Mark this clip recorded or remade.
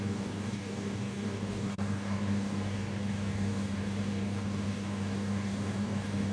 remade